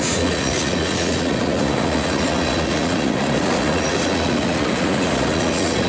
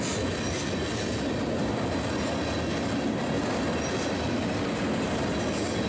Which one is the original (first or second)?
second